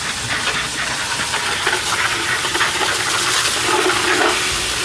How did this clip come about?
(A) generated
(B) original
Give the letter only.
B